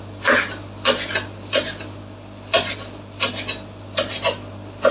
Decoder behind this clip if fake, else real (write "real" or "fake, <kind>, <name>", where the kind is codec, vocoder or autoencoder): real